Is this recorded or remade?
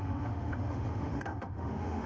remade